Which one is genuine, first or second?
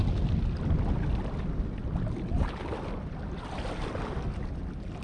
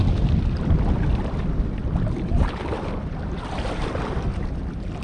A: first